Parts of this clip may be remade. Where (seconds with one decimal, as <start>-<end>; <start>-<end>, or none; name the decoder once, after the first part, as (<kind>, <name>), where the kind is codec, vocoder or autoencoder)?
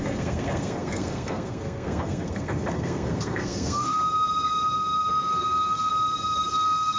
0.0-4.0 (codec, SNAC); 5.1-5.9; 6.5-7.0